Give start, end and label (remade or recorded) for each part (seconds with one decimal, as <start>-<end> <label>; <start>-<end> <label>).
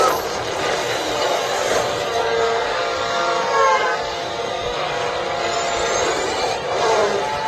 0.0-0.8 recorded; 0.8-5.1 remade; 5.1-7.5 recorded